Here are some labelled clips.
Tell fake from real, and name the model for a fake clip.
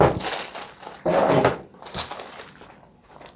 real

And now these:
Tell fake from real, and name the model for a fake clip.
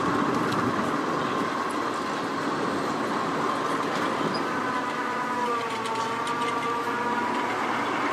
real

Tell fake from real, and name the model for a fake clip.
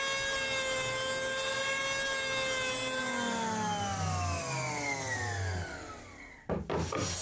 real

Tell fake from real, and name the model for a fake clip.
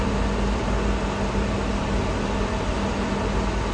real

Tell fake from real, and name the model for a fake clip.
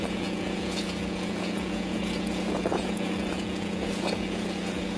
fake, vocoder, Vocos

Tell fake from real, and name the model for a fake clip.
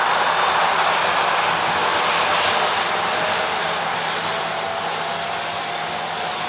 real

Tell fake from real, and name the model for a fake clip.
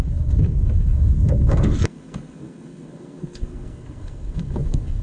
fake, codec, SNAC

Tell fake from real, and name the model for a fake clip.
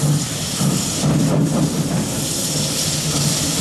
real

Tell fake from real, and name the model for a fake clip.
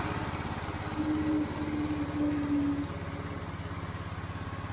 real